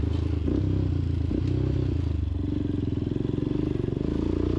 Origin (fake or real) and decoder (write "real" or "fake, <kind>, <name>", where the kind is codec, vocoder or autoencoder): real